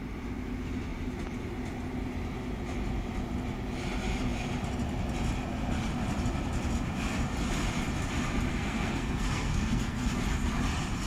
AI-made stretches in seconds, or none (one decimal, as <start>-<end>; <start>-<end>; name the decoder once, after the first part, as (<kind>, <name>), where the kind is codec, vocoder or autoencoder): 8.5-10.1 (codec, SNAC)